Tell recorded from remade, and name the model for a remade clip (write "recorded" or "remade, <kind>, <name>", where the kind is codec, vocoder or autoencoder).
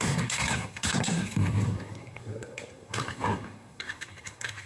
remade, codec, SNAC